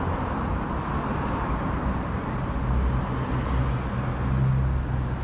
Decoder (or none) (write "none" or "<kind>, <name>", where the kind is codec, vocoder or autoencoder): none